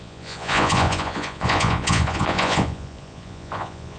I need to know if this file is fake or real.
fake